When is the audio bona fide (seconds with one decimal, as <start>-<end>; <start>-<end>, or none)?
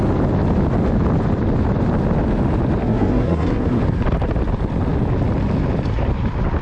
0.0-2.8; 3.8-6.6